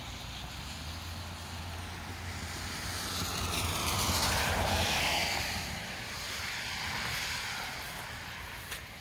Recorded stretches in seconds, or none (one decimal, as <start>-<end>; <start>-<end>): 0.0-4.7; 5.4-9.0